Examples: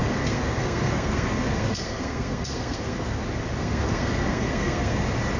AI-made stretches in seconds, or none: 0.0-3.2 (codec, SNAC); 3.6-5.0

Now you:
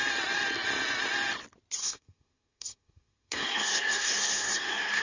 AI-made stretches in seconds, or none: 1.8-5.0 (codec, SNAC)

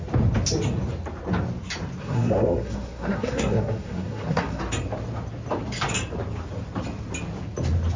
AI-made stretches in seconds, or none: 2.0-4.6 (codec, SNAC)

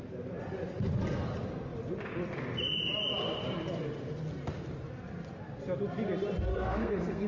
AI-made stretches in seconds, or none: 6.5-7.3 (codec, SNAC)